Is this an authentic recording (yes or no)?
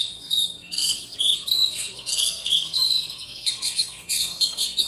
no